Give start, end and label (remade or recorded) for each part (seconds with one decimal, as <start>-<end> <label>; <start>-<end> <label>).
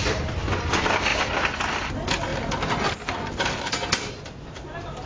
0.0-5.1 recorded